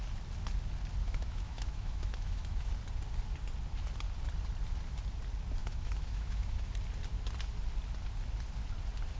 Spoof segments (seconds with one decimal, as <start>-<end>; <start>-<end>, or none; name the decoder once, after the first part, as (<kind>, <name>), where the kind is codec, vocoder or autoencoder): 1.0-2.7 (autoencoder, DAC-VAE); 5.6-6.7